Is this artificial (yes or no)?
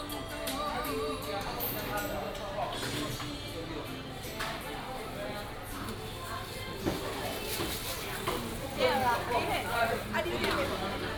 no